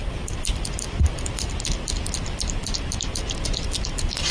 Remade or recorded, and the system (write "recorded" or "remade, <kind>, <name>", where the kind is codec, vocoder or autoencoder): recorded